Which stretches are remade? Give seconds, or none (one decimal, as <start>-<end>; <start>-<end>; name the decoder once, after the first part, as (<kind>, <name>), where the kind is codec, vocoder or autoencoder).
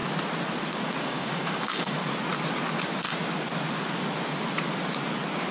1.0-2.0 (codec, DAC)